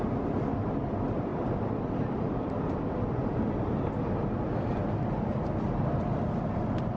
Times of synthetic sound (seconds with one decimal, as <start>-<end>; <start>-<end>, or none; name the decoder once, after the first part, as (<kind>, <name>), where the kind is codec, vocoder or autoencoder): 1.3-3.9 (vocoder, BigVGAN v2)